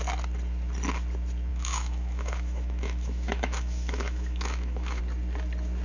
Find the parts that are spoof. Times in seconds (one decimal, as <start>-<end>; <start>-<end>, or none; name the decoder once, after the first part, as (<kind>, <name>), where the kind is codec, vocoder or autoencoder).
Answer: 1.5-5.0 (autoencoder, DAC-VAE)